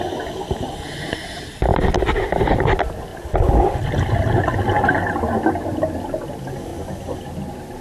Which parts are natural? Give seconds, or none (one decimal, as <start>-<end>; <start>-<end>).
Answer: 0.0-7.8